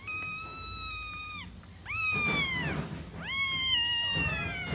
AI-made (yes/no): no